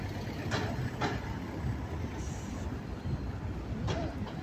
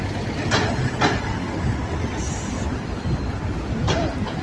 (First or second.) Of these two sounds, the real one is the second